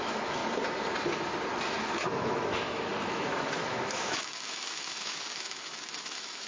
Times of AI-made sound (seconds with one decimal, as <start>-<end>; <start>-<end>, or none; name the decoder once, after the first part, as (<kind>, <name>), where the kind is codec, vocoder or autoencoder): 0.0-0.4 (autoencoder, DAC-VAE); 1.8-6.5